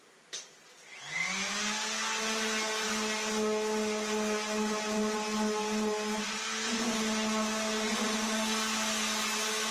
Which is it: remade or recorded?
recorded